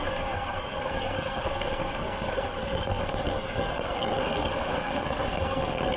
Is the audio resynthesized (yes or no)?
yes